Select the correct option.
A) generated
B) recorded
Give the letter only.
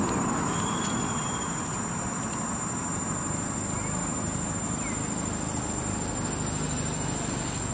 B